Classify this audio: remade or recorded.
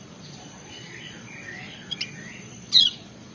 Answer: remade